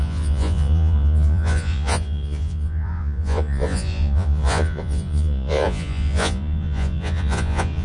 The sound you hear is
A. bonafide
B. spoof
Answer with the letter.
B